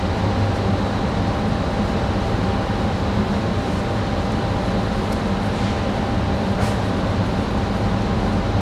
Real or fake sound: real